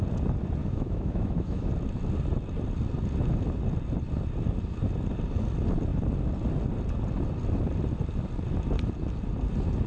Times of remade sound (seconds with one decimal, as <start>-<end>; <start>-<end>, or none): 0.6-1.7